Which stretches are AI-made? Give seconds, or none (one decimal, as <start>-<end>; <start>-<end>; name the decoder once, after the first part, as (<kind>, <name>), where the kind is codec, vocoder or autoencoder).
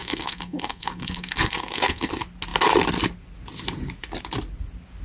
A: 0.0-2.1 (codec, SNAC)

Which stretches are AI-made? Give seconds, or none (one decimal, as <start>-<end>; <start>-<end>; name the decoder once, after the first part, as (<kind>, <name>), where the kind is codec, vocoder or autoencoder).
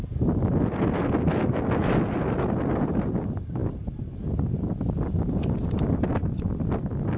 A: none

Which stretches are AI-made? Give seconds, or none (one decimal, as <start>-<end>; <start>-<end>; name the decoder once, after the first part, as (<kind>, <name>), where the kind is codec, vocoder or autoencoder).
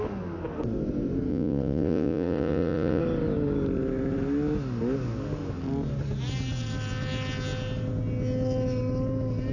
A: 1.3-3.0 (vocoder, Vocos)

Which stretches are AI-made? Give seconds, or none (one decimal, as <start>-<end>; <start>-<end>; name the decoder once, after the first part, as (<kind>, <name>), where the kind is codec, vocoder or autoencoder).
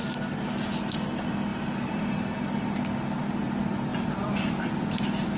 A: 1.5-2.3 (vocoder, BigVGAN v2); 3.9-4.7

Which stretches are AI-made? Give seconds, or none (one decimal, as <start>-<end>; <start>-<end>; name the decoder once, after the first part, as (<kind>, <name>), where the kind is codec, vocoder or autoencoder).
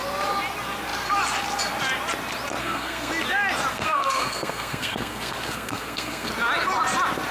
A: 2.6-3.1 (codec, SNAC); 3.7-6.3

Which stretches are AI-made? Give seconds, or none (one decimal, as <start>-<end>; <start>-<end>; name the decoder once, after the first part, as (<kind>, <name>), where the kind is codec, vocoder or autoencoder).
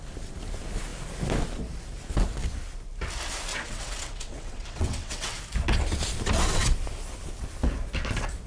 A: 3.5-5.4 (vocoder, WaveNeXt)